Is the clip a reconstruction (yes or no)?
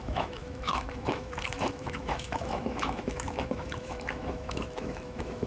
yes